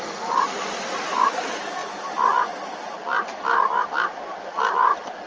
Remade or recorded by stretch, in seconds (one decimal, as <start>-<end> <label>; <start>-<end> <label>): 0.0-5.3 recorded